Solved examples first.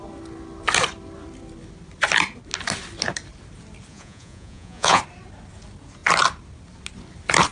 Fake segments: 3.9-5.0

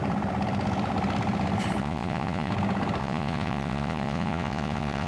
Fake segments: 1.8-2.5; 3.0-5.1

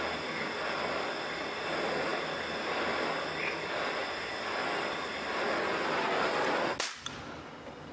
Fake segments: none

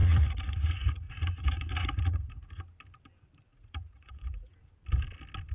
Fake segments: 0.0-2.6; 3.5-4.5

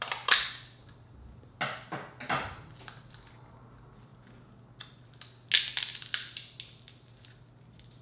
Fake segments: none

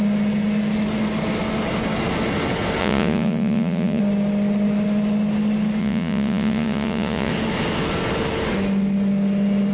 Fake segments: 2.8-4.0; 5.8-7.3

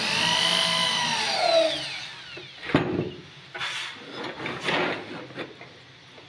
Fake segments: none

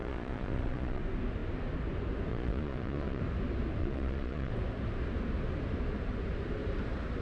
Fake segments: 0.0-1.0; 2.3-3.2; 3.8-4.5